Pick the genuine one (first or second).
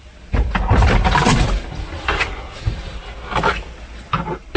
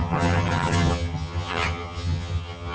first